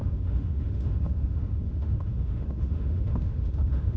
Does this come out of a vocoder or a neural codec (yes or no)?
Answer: yes